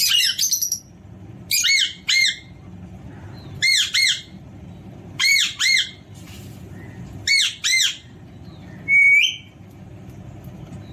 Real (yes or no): yes